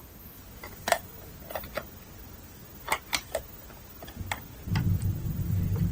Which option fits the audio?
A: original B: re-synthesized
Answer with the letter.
A